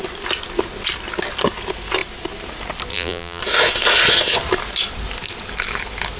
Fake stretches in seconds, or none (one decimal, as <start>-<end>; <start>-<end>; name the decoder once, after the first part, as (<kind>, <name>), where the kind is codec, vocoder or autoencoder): 2.9-3.4 (vocoder, BigVGAN v2)

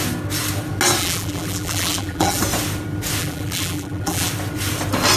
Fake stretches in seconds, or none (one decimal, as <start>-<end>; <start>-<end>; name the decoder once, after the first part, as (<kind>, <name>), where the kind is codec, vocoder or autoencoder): 1.0-2.4 (vocoder, BigVGAN v2); 3.2-4.3